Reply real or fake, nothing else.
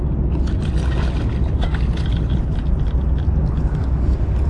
real